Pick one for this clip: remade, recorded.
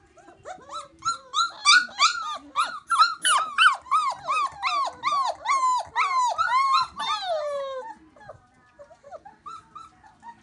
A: recorded